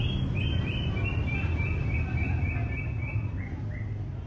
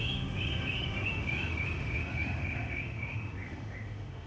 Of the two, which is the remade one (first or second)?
second